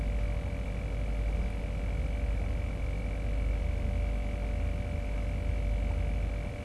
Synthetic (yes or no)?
no